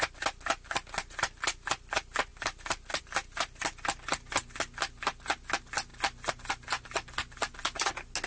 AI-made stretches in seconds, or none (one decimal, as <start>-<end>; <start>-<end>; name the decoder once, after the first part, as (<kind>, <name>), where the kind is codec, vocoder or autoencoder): none